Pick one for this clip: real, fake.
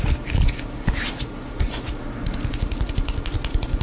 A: real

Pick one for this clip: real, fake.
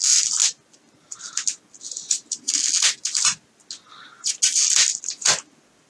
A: real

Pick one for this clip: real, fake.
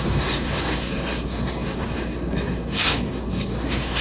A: fake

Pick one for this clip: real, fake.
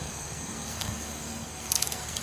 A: fake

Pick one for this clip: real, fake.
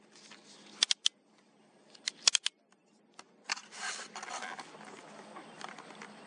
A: real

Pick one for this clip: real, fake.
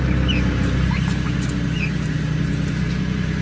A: real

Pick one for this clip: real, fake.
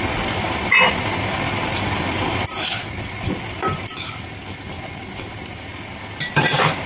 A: real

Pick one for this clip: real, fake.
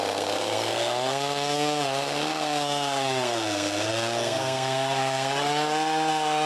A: fake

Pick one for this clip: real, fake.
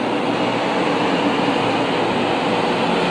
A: real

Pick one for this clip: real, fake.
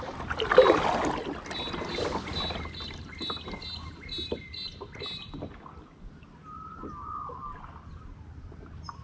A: real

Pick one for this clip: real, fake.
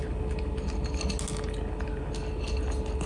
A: real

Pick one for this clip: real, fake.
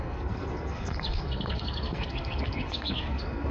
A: fake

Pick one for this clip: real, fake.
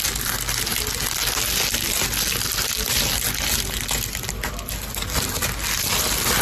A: real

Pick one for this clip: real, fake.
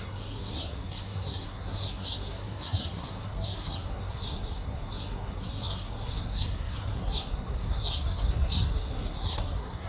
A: fake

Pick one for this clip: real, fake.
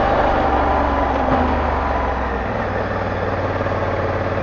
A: real